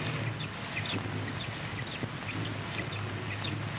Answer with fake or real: real